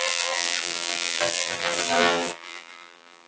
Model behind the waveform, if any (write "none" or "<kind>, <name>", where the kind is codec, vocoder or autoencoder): vocoder, BigVGAN v2